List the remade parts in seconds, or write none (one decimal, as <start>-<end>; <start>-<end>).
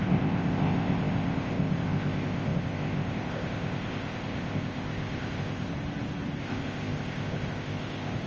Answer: 0.0-5.7; 6.4-8.3